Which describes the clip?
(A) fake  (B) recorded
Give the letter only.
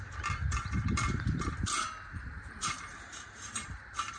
A